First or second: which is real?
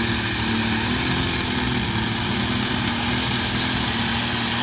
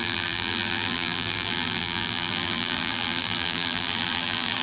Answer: first